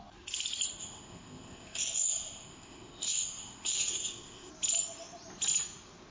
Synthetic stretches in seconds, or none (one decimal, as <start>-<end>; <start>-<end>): 0.8-4.5

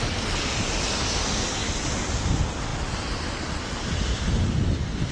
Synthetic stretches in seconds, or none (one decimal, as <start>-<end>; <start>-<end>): none

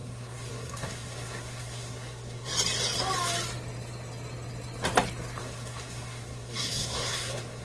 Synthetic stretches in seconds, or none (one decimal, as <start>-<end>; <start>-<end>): 0.0-2.5; 5.4-7.6

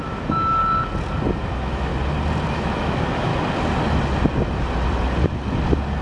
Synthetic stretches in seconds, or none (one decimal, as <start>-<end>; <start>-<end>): 0.0-0.6; 1.4-1.9; 2.5-3.3

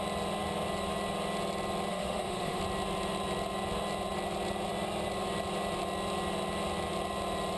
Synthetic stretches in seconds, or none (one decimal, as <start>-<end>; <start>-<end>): 1.9-2.6

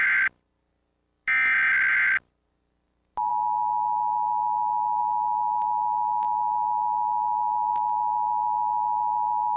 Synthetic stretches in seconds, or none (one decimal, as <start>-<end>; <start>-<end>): none

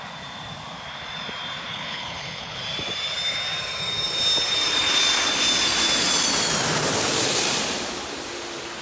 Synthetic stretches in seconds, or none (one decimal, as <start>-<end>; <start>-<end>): 1.7-2.6

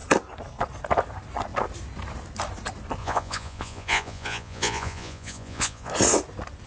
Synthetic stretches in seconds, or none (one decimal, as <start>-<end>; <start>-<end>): 3.0-5.9